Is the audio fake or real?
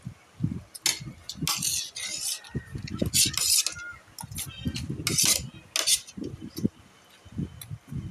real